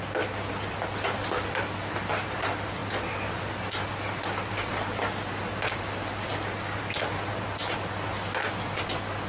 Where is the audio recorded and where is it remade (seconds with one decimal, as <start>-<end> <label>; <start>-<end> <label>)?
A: 0.0-9.3 recorded